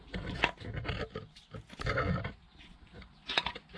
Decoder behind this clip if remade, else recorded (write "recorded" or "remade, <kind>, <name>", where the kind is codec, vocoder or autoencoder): recorded